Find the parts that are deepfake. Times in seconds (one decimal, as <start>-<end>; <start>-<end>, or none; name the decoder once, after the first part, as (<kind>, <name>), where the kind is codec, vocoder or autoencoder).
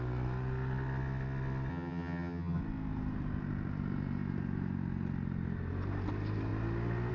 1.7-2.6 (vocoder, HiFi-GAN)